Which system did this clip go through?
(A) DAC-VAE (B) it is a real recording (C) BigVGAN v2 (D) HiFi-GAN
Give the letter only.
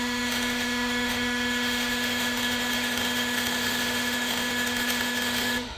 A